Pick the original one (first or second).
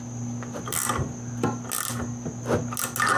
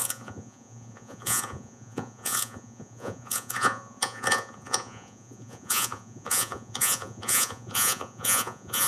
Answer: first